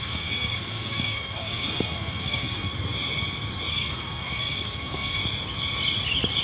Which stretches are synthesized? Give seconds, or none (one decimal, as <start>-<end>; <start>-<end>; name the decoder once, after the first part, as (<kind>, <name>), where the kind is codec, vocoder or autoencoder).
0.0-2.7 (codec, SNAC); 3.7-5.2